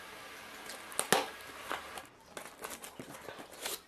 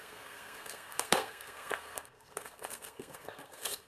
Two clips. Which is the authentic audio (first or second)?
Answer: first